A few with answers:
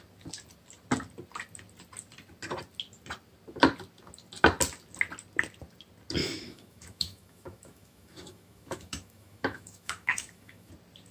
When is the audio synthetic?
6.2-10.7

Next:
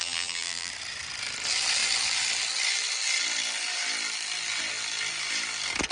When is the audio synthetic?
0.0-0.7

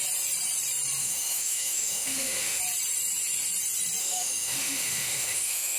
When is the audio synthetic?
1.0-2.6; 4.0-5.8

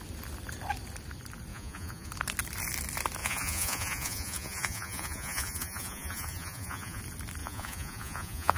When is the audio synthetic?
1.5-2.1; 3.2-7.0; 7.4-8.6

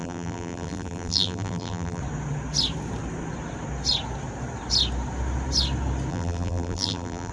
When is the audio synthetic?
0.0-2.0; 6.1-7.3

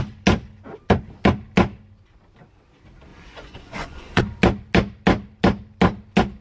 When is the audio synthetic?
3.1-4.2

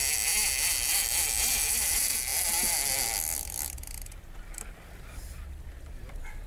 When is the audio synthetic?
none

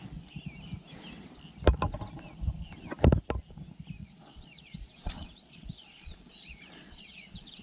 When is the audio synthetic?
4.0-7.6